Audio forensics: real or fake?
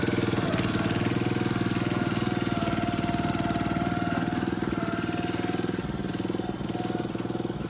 real